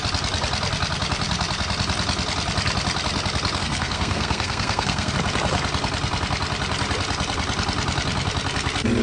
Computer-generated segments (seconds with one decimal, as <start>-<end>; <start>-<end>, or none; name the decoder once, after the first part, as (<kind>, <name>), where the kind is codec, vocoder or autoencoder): 3.6-5.1 (codec, SNAC)